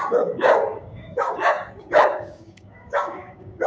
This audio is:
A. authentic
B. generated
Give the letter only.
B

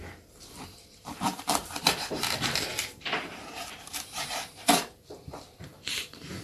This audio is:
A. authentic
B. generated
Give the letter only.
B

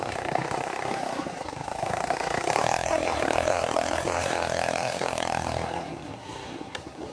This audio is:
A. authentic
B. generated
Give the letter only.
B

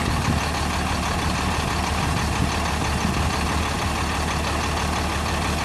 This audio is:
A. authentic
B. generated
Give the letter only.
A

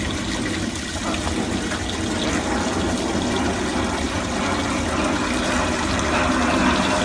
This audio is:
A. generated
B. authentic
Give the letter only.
B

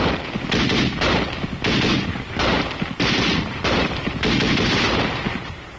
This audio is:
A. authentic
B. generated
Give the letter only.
B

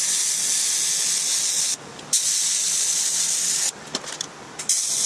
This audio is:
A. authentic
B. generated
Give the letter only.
A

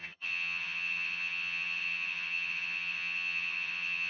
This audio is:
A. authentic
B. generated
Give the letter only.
B